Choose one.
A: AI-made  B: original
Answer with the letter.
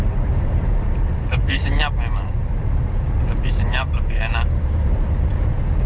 A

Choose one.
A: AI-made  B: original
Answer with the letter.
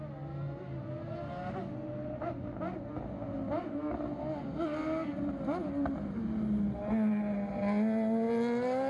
B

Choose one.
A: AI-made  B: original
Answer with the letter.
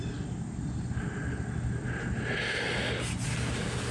B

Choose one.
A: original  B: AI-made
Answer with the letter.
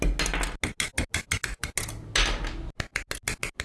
A